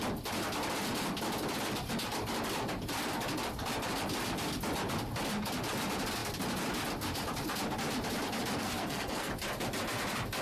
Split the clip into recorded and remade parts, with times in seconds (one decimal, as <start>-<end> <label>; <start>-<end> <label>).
0.0-8.6 recorded; 8.6-9.3 remade; 9.3-10.4 recorded